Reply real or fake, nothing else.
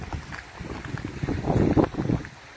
real